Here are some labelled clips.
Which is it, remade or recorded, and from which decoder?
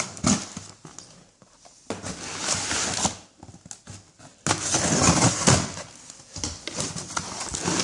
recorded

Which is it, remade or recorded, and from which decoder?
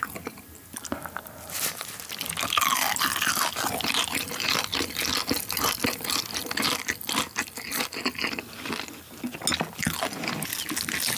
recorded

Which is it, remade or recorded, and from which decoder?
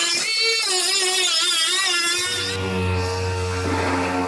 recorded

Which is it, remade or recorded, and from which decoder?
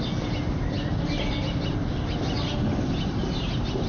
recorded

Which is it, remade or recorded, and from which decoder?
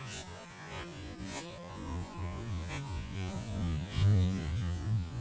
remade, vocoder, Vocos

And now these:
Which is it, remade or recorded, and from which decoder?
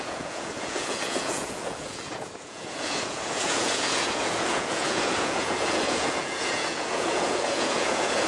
remade, vocoder, Vocos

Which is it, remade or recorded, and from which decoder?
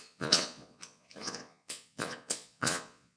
remade, vocoder, Vocos